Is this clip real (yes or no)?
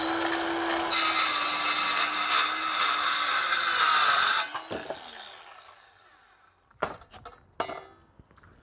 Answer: yes